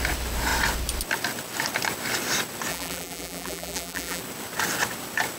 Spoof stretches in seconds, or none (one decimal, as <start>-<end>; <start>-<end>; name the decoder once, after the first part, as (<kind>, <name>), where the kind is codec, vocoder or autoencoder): 2.7-4.2 (vocoder, BigVGAN v2)